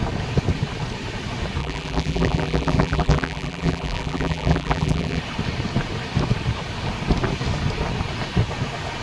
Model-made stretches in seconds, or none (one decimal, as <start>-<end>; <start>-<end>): 1.6-5.2